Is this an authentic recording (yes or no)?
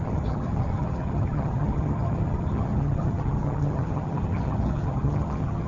no